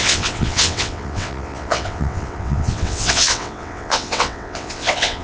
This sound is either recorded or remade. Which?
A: remade